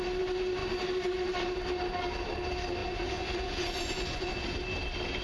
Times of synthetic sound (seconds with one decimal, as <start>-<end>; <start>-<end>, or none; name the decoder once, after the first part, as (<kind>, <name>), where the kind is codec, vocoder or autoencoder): 2.8-4.3 (vocoder, Vocos)